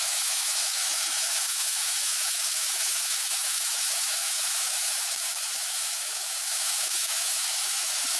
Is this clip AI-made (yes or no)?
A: yes